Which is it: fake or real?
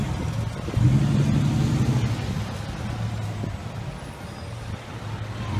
real